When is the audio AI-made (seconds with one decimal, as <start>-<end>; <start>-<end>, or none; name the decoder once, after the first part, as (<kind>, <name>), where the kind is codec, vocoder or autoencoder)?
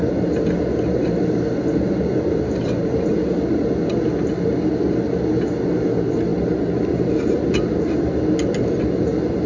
none